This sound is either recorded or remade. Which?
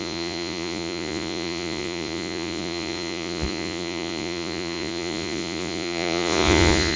remade